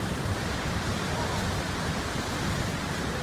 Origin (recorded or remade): recorded